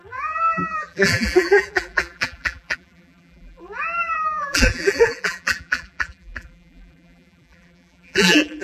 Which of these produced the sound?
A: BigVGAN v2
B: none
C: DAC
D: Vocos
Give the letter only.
A